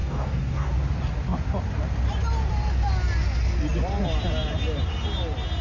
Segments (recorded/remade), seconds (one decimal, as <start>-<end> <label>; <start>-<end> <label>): 0.0-0.7 remade; 0.7-5.6 recorded